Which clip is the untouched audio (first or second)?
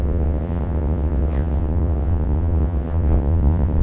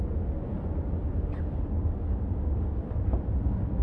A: second